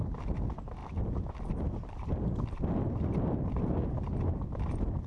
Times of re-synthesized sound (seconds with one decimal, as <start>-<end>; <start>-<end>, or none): none